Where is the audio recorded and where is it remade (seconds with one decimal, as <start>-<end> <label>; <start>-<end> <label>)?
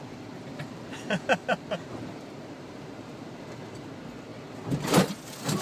0.0-0.5 recorded; 0.5-3.9 remade; 3.9-5.6 recorded